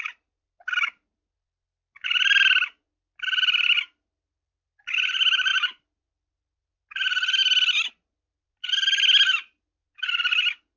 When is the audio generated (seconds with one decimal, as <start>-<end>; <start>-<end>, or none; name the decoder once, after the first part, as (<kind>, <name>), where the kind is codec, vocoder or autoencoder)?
none